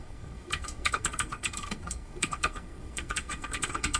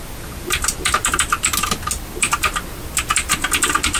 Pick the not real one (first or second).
first